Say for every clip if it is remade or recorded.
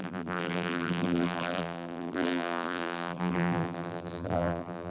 remade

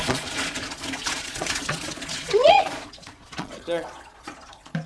remade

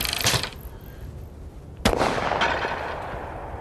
recorded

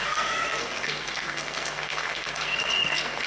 remade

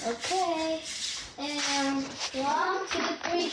recorded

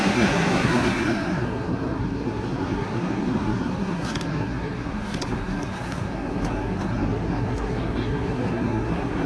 remade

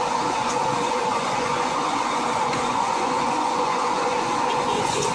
remade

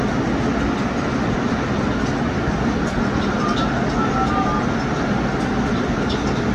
recorded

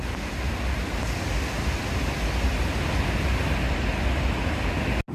recorded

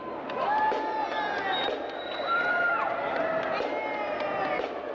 recorded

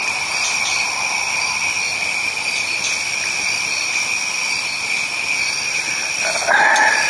recorded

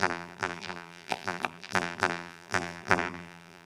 remade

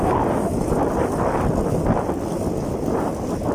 recorded